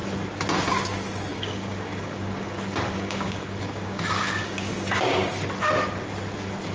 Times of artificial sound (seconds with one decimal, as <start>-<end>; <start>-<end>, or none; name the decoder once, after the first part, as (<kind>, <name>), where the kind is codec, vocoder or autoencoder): 1.3-5.3 (codec, DAC)